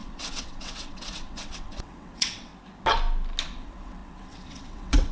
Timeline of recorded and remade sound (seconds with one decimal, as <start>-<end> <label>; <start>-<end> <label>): 0.0-2.5 remade; 2.5-3.4 recorded; 3.4-5.1 remade